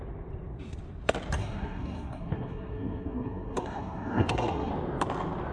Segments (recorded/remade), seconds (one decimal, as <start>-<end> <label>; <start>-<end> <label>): 0.0-1.4 recorded; 1.4-4.7 remade; 4.7-5.5 recorded